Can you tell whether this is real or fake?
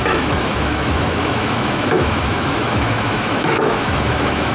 fake